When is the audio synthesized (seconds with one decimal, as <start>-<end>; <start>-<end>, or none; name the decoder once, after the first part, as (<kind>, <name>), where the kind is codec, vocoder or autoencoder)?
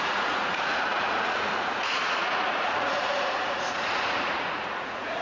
0.0-5.2 (vocoder, Vocos)